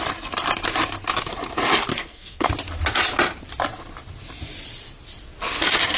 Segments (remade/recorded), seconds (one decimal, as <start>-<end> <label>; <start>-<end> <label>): 0.0-1.9 recorded; 1.9-2.5 remade; 2.5-6.0 recorded